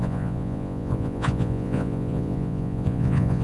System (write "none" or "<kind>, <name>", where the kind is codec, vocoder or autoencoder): vocoder, Vocos